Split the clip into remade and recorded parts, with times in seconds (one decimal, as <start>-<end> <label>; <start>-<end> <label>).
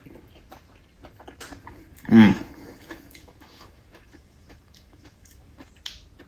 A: 0.0-1.9 recorded; 1.9-5.7 remade; 5.7-6.3 recorded